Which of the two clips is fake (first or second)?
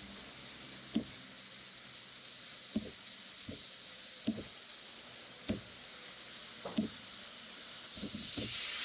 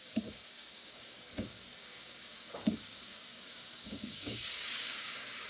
second